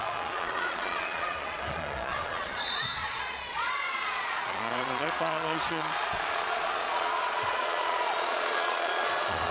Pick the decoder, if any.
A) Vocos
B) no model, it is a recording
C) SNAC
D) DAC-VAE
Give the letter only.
A